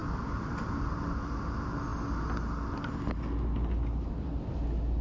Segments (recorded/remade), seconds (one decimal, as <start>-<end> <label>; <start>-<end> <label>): 0.0-1.4 remade; 1.4-5.0 recorded